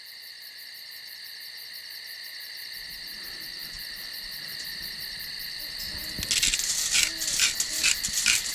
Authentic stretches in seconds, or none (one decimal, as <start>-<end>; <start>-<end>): 0.0-8.5